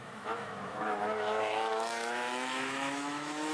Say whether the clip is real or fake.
fake